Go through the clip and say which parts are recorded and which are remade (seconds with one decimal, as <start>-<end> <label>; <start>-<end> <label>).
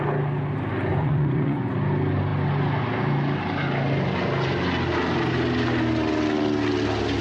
0.0-0.9 recorded; 0.9-1.7 remade; 1.7-7.2 recorded